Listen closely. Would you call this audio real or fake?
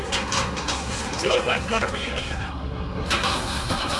fake